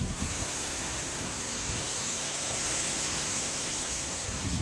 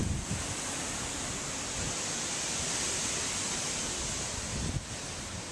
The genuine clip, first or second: second